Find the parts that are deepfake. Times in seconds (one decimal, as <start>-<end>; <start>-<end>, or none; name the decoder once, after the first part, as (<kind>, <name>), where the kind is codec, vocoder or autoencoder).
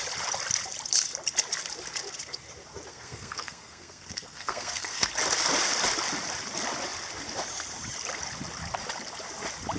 2.9-5.1 (codec, SNAC)